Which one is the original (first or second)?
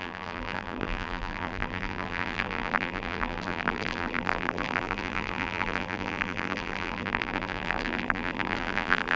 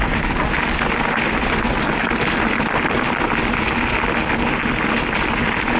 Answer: second